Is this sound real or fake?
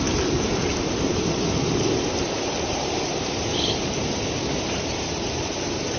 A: fake